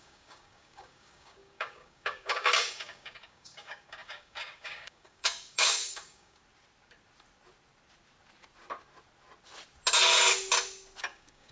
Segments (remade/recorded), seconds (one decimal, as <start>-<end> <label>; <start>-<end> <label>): 0.0-6.4 remade; 6.4-11.0 recorded; 11.0-11.5 remade